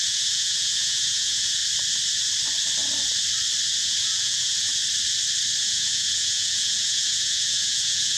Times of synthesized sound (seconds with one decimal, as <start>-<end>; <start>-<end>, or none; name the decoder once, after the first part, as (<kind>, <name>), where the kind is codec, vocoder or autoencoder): 0.0-1.6 (vocoder, Vocos); 3.8-4.7; 5.6-8.2